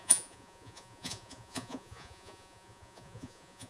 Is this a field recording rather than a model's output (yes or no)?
no